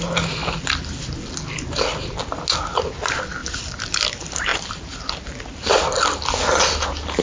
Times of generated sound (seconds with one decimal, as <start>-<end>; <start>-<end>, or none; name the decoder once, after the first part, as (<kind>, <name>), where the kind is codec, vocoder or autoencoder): none